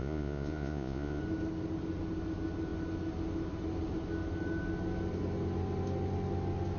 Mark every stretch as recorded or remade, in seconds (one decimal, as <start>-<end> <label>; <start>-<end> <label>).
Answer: 0.0-1.2 remade; 1.2-6.8 recorded